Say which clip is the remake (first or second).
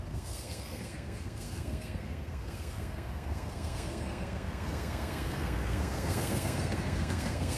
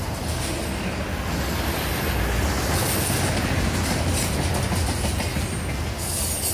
first